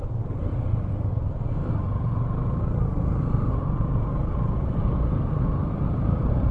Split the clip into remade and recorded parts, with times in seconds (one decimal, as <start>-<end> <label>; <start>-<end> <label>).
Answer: 0.0-4.6 recorded; 4.6-6.5 remade